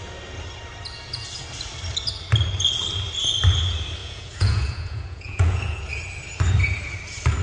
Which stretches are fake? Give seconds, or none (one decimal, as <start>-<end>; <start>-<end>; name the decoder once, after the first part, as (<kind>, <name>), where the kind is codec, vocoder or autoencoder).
4.0-5.9 (vocoder, Vocos)